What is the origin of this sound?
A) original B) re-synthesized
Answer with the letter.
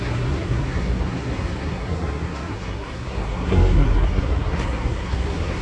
B